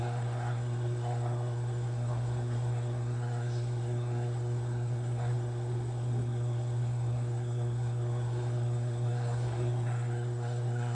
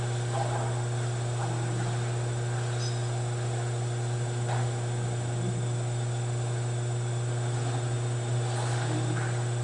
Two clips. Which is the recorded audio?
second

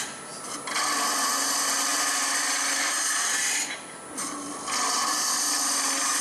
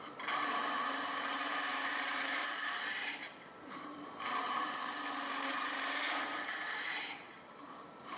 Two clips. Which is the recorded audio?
first